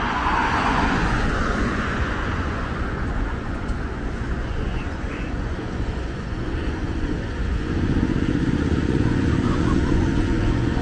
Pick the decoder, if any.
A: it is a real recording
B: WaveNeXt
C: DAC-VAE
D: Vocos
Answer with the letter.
D